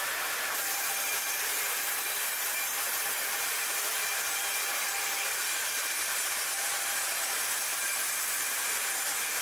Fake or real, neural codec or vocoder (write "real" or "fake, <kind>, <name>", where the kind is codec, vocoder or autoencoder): fake, vocoder, BigVGAN v2